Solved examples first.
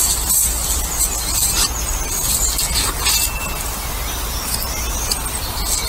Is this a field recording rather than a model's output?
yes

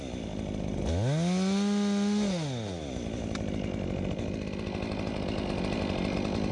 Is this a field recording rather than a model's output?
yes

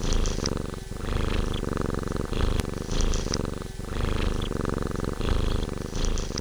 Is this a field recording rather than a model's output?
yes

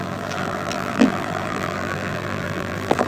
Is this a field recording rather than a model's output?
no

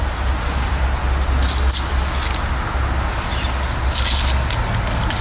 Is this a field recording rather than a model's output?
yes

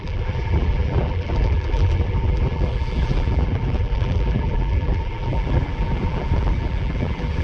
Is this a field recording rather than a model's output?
no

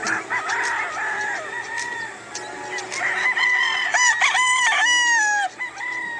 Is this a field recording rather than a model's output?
yes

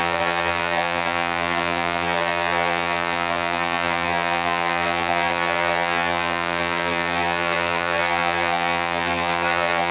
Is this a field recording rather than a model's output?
no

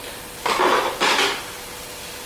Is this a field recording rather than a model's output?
yes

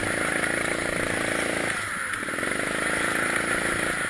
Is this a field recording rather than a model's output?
yes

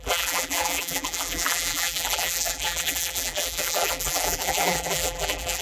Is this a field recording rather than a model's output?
no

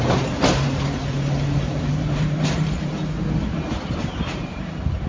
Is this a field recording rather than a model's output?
no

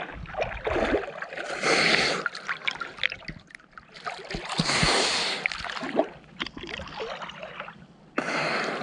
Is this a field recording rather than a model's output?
yes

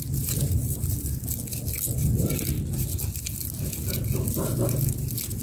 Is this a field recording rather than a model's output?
yes